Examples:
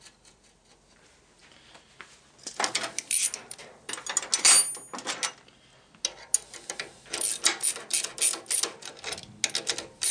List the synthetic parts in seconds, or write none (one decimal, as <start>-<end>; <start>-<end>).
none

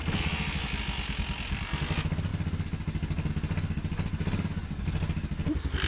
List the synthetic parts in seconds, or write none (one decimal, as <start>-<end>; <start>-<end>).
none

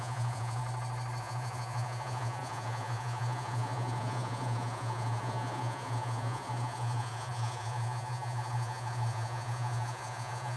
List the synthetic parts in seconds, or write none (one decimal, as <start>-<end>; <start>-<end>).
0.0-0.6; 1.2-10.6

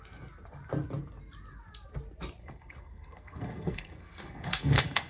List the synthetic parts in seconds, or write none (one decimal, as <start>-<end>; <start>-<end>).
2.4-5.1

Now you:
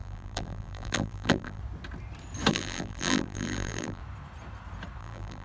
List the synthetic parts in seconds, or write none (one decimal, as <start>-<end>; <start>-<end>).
0.0-1.6; 2.5-4.0; 5.0-5.4

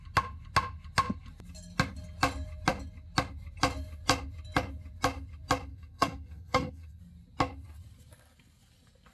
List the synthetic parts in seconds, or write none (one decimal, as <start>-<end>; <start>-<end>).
5.7-7.0